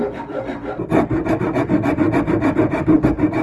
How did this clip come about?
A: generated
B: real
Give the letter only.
A